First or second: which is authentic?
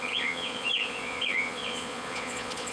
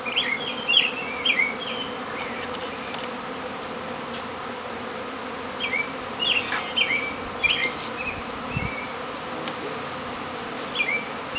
second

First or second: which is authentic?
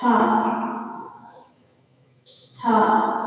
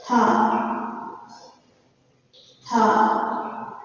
second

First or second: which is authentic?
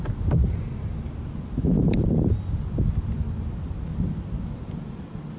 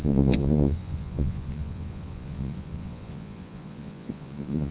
first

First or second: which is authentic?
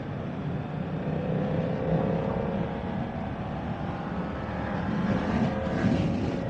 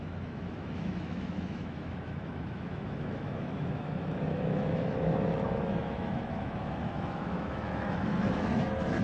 first